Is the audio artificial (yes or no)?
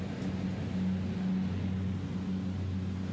no